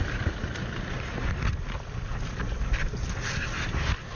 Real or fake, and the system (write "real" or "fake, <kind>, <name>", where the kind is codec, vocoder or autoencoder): real